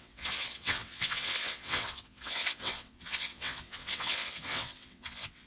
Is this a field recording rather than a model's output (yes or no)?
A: no